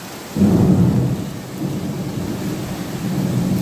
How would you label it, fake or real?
real